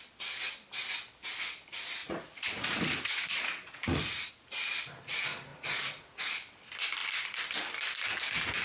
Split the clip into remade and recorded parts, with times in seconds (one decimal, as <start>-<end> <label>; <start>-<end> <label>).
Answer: 0.0-2.0 recorded; 2.0-4.3 remade; 4.3-5.5 recorded; 5.5-6.2 remade; 6.2-8.6 recorded